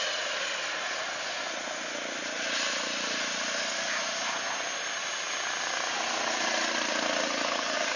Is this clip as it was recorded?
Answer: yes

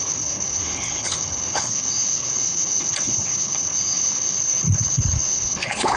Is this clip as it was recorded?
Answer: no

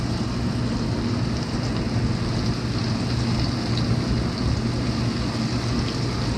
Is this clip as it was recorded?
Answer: yes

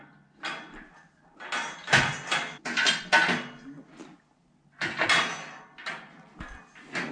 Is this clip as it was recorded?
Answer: yes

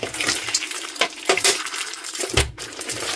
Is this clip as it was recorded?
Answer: no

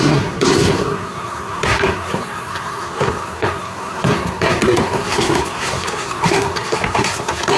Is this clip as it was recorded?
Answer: no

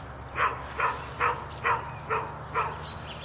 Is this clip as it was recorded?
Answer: yes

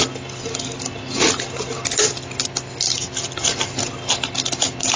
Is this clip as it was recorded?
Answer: yes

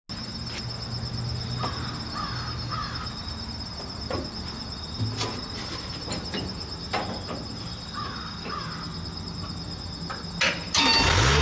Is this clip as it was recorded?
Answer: yes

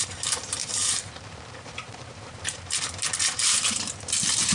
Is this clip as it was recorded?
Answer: no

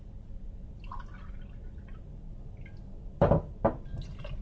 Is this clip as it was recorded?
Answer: yes